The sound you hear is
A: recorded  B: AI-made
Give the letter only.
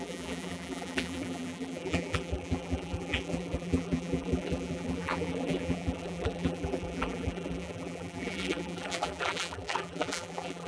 B